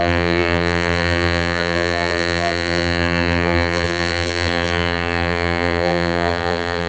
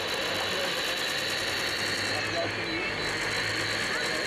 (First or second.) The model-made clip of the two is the first